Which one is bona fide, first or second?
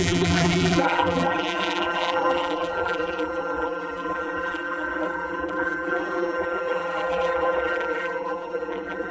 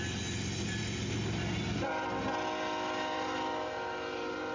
second